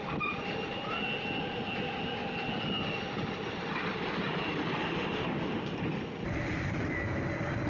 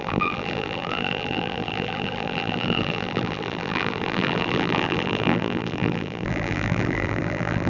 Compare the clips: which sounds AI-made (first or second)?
second